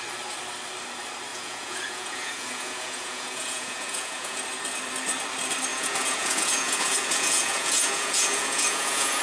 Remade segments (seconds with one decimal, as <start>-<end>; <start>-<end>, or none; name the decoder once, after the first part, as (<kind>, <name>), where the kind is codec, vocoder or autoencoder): 1.3-4.4 (vocoder, Vocos); 5.7-9.2